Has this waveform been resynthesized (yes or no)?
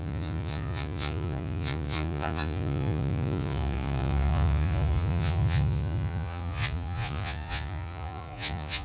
yes